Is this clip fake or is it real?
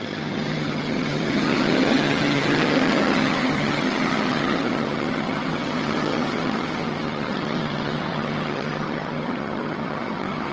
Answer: fake